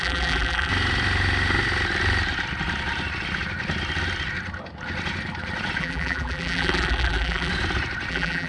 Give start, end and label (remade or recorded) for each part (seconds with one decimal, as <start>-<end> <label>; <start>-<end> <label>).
0.0-0.7 remade; 0.7-5.8 recorded; 5.8-7.5 remade; 7.5-8.1 recorded; 8.1-8.5 remade